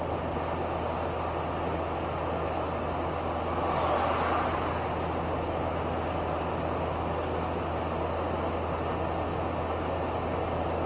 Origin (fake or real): real